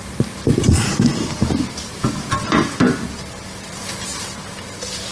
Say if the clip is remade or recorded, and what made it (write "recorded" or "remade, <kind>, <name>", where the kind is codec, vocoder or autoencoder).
remade, vocoder, BigVGAN v2